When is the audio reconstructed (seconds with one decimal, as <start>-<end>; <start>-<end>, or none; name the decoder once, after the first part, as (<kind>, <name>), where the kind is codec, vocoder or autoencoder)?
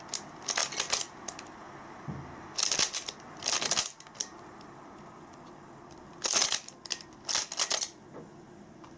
none